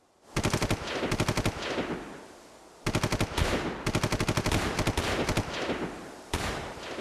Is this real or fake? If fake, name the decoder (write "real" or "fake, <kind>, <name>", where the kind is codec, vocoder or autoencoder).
real